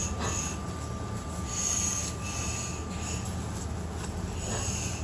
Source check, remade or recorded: recorded